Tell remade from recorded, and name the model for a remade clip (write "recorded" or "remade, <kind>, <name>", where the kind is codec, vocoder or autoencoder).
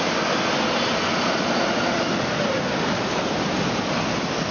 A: recorded